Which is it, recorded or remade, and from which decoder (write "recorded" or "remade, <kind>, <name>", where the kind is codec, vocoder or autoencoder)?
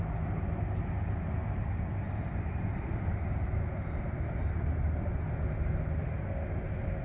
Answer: recorded